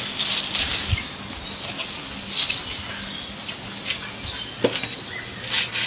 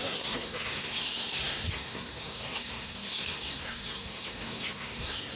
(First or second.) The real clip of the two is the first